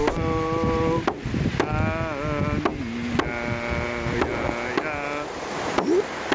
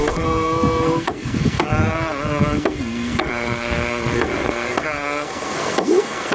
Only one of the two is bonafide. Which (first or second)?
first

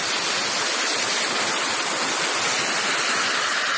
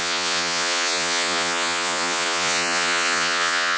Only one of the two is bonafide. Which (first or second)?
first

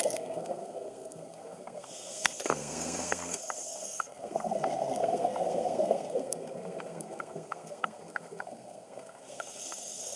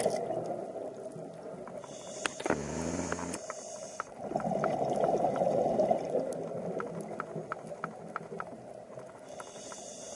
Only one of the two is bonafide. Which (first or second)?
second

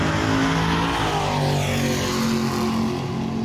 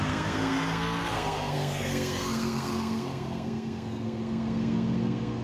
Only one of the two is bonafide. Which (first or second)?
first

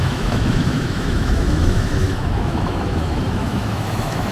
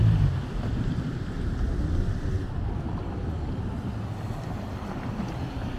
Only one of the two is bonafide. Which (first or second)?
second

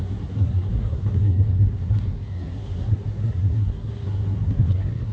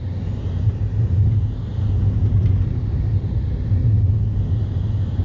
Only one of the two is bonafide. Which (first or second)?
second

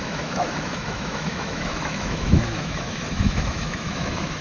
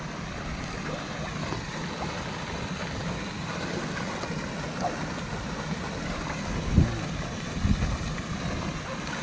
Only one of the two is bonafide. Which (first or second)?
second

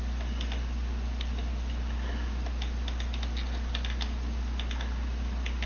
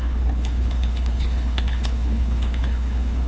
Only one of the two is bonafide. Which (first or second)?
first